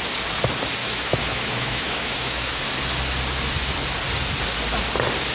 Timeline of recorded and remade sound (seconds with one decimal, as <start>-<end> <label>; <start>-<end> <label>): 0.0-0.8 recorded; 0.8-2.6 remade; 2.6-5.3 recorded